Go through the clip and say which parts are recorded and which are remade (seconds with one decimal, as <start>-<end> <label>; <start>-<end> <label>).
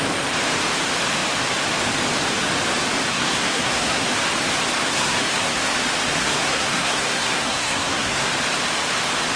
0.0-3.1 recorded; 3.1-4.1 remade; 4.1-4.9 recorded; 4.9-5.6 remade; 5.6-6.2 recorded; 6.2-8.3 remade; 8.3-9.4 recorded